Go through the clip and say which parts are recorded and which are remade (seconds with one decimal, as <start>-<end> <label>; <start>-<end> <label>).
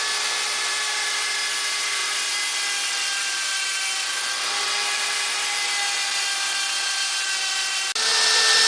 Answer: 0.0-8.7 recorded